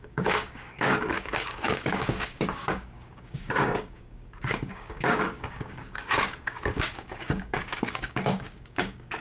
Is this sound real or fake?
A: fake